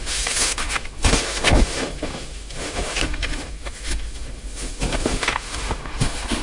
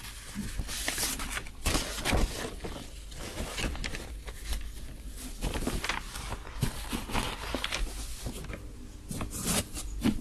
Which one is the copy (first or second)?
first